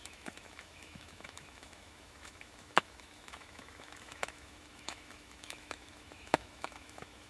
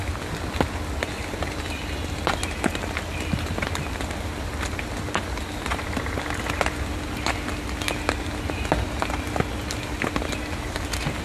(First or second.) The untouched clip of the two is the second